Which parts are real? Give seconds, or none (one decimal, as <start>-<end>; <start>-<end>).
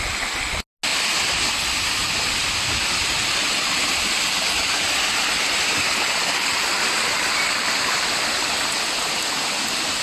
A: 0.0-0.9; 2.8-10.0